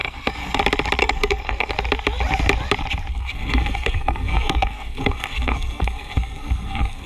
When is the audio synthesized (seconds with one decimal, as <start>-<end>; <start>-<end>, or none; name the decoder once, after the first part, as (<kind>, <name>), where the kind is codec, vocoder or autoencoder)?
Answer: 0.0-0.6 (codec, SNAC); 1.0-1.7; 3.1-7.1

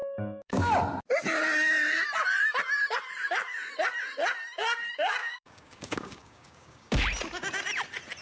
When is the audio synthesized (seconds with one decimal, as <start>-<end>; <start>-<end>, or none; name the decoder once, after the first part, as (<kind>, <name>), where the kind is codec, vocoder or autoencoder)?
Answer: 0.0-0.7 (codec, DAC); 5.2-7.0

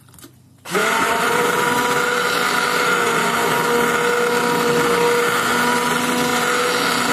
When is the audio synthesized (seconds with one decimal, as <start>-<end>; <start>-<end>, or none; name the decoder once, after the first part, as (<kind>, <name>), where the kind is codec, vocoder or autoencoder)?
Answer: 0.8-1.4 (vocoder, BigVGAN v2)

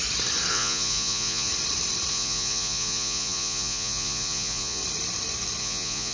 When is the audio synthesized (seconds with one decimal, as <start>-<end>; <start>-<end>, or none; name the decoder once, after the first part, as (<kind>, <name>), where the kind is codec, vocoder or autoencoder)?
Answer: 0.5-1.5 (vocoder, Vocos); 2.1-4.8; 5.6-6.1

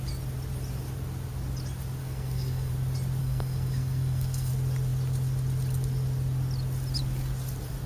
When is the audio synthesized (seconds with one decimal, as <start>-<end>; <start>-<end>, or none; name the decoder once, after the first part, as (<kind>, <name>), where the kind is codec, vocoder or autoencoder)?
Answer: 2.0-2.7 (codec, SNAC); 3.2-4.5